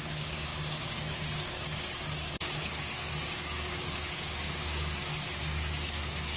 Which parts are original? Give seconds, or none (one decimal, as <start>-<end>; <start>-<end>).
none